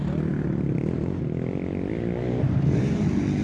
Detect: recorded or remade recorded